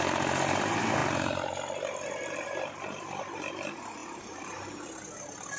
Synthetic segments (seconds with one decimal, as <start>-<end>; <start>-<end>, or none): 4.0-5.0